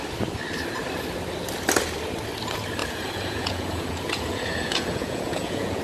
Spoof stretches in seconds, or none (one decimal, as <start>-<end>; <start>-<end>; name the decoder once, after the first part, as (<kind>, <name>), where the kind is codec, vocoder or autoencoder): 2.8-5.8 (vocoder, Vocos)